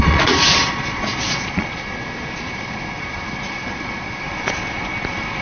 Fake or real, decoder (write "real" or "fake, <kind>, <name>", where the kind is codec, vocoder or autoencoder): fake, vocoder, Vocos